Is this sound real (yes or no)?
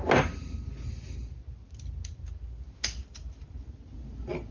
yes